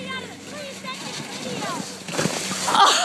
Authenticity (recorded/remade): recorded